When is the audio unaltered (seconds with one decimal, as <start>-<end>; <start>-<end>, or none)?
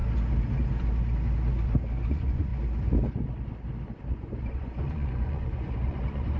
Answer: 0.0-2.1; 2.5-4.1